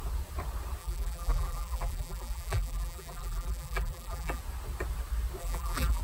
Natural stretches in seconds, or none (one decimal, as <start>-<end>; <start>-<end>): 0.0-0.8; 4.4-5.4